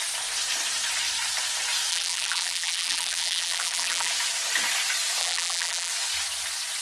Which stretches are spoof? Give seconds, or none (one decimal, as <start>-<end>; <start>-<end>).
1.9-4.1; 5.2-5.9